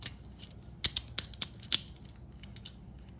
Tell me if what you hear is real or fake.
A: real